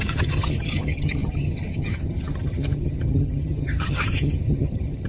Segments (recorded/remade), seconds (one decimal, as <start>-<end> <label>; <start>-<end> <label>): 0.0-5.1 remade